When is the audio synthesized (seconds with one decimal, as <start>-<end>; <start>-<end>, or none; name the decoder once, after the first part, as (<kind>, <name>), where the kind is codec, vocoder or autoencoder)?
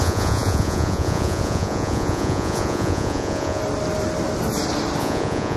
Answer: 0.0-3.6 (vocoder, Vocos); 5.0-5.6